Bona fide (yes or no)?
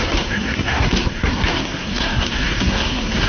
no